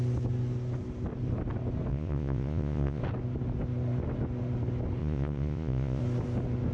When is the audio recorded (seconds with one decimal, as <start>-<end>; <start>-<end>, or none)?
0.0-1.9; 3.0-5.0; 6.0-6.7